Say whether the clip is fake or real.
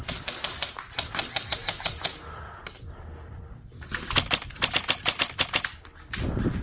real